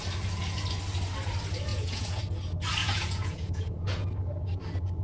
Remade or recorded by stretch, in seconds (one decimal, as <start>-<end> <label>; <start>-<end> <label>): 0.0-1.7 recorded; 1.7-2.2 remade; 2.2-2.8 recorded; 2.8-4.1 remade; 4.1-5.0 recorded